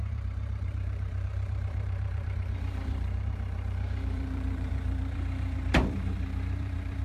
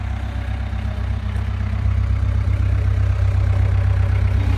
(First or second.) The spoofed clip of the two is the first